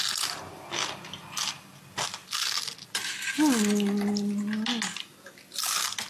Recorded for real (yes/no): yes